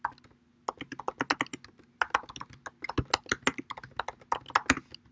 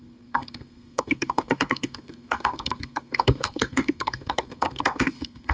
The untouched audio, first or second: first